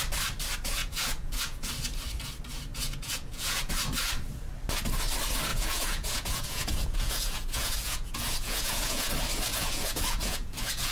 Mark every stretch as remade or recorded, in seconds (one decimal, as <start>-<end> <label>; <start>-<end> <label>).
0.0-0.8 recorded; 0.8-1.7 remade; 1.7-2.7 recorded; 2.7-3.7 remade; 3.7-5.5 recorded; 5.5-9.1 remade; 9.1-9.5 recorded; 9.5-10.9 remade